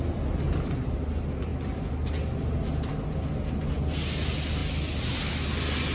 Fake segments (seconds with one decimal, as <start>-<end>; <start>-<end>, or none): none